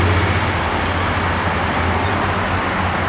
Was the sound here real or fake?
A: real